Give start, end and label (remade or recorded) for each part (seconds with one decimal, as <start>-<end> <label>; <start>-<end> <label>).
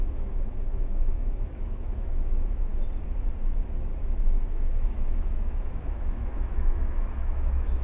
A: 0.0-2.7 remade; 2.7-4.5 recorded; 4.5-7.8 remade